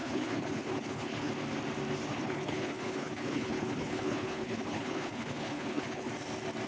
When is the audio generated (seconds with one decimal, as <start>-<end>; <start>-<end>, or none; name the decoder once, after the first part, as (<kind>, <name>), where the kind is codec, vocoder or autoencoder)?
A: 0.0-1.3 (codec, HILCodec); 2.1-6.1